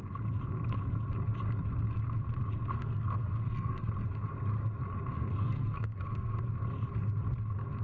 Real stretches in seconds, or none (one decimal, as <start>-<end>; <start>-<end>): 0.0-2.7; 3.9-5.1; 6.4-7.8